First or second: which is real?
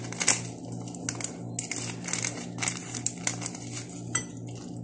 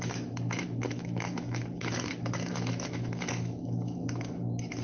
first